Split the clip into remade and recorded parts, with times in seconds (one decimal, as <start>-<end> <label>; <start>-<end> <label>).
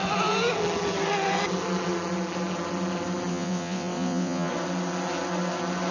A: 0.0-3.3 recorded; 3.3-4.5 remade; 4.5-5.9 recorded